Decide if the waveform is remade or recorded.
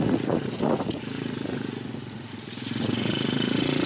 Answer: remade